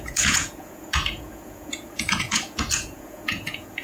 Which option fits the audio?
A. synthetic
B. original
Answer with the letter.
A